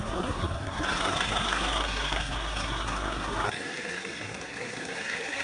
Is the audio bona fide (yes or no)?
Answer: no